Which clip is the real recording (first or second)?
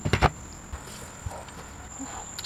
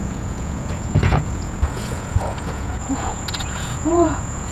first